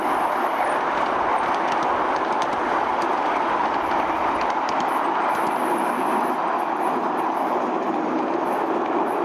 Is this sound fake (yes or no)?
no